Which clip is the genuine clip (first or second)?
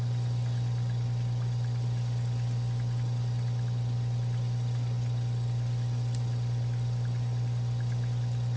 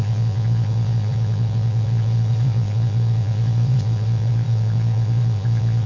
first